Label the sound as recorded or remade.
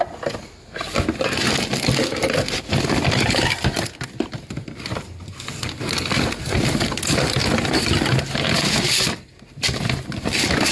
recorded